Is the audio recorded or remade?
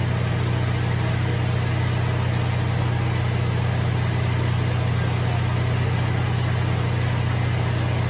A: recorded